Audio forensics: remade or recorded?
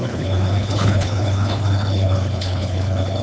remade